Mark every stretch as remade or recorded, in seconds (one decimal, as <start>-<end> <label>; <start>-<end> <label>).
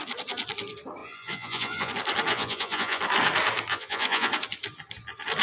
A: 0.0-1.0 recorded; 1.0-1.9 remade; 1.9-2.3 recorded; 2.3-3.0 remade; 3.0-3.7 recorded; 3.7-4.3 remade; 4.3-5.4 recorded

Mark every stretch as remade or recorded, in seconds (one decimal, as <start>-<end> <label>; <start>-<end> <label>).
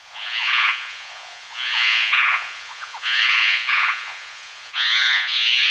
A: 0.0-5.7 remade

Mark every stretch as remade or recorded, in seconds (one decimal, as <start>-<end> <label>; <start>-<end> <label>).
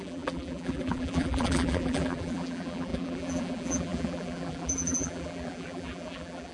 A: 0.0-6.5 remade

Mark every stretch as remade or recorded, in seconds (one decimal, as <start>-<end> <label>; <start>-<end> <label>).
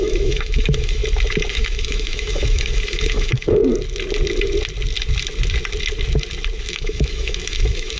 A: 0.0-1.0 remade; 1.0-1.5 recorded; 1.5-3.6 remade; 3.6-6.6 recorded; 6.6-8.0 remade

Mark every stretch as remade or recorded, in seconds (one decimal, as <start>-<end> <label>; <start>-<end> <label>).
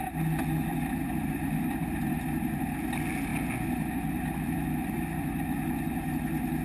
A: 0.0-0.7 recorded; 0.7-2.8 remade; 2.8-3.3 recorded; 3.3-5.4 remade; 5.4-6.6 recorded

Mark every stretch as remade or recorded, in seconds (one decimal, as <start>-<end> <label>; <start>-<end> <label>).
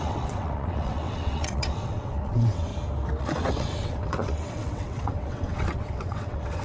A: 0.0-2.7 remade; 2.7-3.2 recorded; 3.2-6.6 remade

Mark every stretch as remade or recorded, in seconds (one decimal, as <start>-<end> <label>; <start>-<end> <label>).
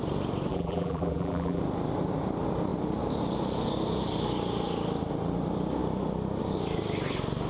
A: 0.0-0.5 recorded; 0.5-1.6 remade; 1.6-7.5 recorded